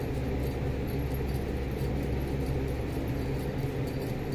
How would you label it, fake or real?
real